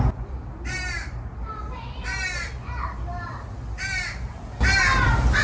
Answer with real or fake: real